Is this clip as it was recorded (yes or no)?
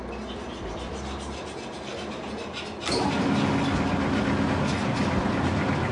yes